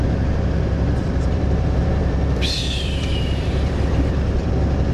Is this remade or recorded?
remade